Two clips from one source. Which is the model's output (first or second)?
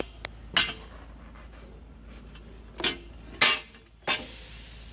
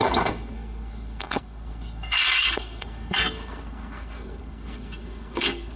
second